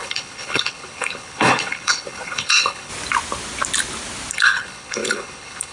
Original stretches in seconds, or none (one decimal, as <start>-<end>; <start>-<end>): 2.9-4.3